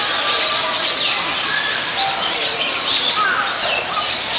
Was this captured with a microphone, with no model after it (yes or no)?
yes